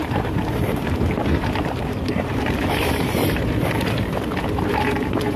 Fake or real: fake